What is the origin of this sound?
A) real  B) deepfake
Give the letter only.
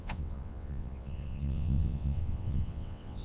B